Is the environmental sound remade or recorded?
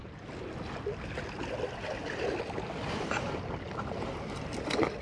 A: recorded